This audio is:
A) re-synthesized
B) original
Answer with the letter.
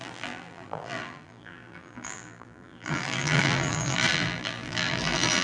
A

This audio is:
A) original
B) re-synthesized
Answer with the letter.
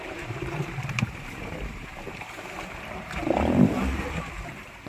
B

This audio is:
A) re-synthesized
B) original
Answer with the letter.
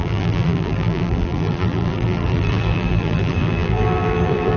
A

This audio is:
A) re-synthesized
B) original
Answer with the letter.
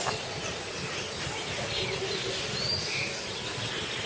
B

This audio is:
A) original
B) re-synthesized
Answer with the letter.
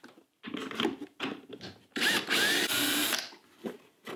A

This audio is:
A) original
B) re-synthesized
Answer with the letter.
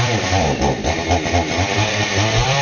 B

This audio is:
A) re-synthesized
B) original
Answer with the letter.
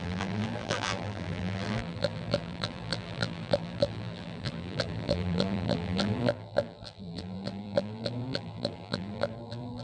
A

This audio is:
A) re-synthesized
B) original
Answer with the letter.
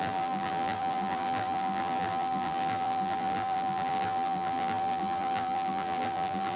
A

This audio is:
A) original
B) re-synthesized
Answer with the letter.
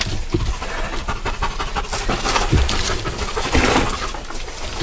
A